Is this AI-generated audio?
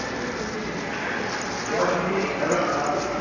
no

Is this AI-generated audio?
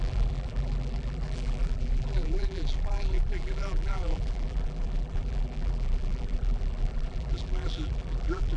yes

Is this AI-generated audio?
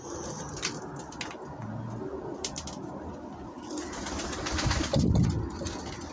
no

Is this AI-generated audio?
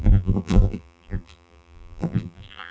yes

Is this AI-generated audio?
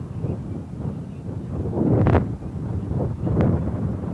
no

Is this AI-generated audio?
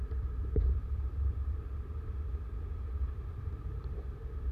yes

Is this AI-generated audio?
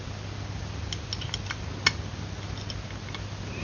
no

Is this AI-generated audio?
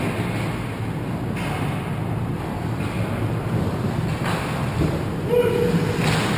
no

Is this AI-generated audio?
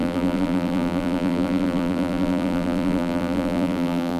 yes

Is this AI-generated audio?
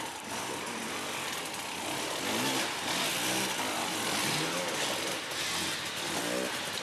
no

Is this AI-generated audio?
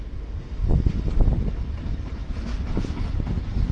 no